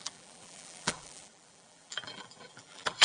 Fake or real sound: fake